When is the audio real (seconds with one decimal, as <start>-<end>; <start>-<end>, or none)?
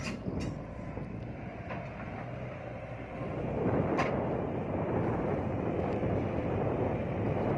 0.0-7.6